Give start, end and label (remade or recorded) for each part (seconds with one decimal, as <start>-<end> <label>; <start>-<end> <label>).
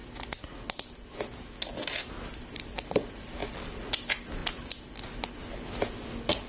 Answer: 0.0-6.5 recorded